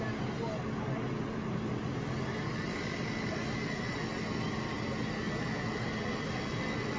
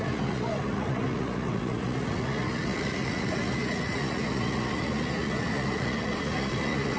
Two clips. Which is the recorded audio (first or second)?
first